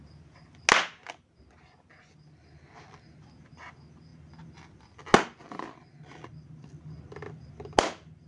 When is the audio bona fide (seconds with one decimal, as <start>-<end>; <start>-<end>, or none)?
0.0-8.3